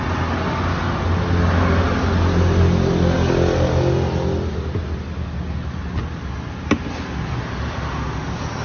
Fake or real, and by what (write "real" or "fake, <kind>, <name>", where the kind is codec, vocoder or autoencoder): real